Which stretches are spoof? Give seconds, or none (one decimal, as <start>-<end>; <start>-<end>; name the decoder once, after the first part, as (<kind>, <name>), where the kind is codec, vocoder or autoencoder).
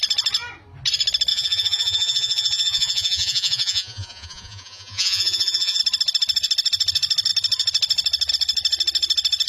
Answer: 1.3-5.8 (vocoder, Vocos)